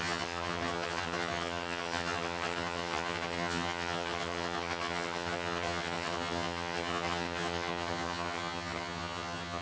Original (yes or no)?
no